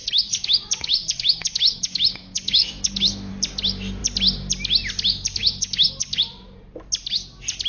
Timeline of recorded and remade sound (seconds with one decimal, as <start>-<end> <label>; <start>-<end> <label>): 0.0-3.3 remade; 3.3-5.4 recorded; 5.4-6.2 remade; 6.2-7.7 recorded

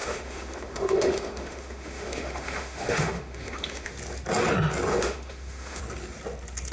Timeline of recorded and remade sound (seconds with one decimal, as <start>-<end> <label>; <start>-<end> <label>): 0.0-3.9 remade; 3.9-4.9 recorded; 4.9-5.8 remade; 5.8-6.7 recorded

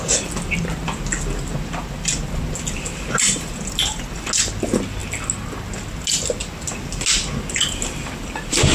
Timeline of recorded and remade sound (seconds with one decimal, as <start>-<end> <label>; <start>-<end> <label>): 0.0-8.7 recorded

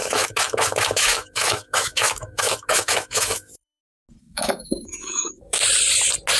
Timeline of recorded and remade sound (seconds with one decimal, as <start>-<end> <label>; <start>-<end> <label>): 0.0-3.8 remade; 3.8-4.2 recorded; 4.2-5.6 remade; 5.6-6.4 recorded

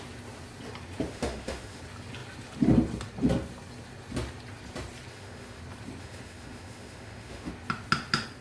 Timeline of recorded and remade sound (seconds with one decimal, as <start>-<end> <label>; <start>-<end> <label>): 0.0-1.1 recorded; 1.1-1.8 remade; 1.8-5.1 recorded; 5.1-5.6 remade; 5.6-6.0 recorded; 6.0-7.5 remade; 7.5-8.4 recorded

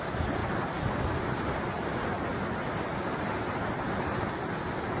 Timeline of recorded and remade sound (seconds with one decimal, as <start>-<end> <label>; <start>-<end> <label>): 0.0-5.0 recorded